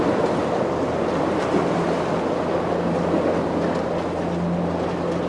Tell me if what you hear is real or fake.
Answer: real